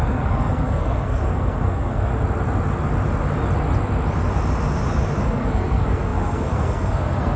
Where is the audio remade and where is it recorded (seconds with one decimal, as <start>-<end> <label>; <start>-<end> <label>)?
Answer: 0.0-2.1 remade; 2.1-5.2 recorded; 5.2-7.4 remade